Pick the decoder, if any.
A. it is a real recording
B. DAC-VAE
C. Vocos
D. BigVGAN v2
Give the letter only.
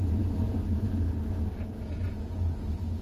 C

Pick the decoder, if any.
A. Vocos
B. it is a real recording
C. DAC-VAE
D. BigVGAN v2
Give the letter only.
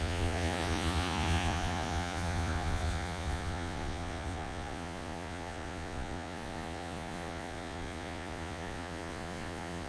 A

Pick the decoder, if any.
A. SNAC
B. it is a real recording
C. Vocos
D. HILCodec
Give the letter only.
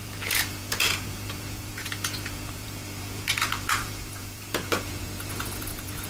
C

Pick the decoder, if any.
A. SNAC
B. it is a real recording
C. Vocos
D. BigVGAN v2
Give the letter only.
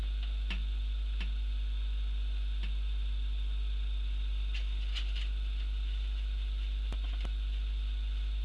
B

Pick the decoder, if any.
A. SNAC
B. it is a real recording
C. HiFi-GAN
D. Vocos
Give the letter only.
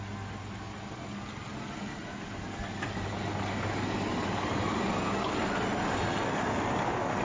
B